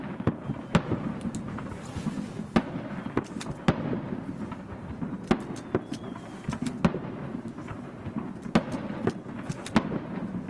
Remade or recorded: recorded